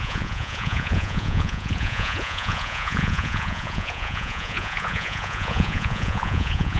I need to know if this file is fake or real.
fake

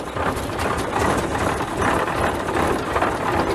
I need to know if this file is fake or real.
real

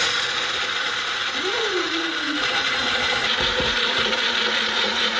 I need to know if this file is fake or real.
fake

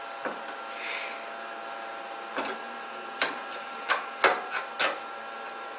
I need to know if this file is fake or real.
real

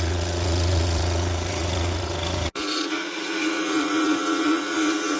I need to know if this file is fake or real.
fake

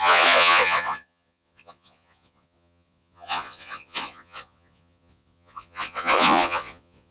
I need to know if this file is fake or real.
fake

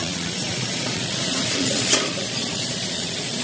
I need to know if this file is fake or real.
fake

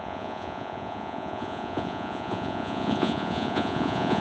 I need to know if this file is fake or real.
fake